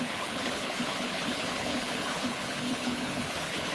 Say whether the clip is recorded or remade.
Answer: remade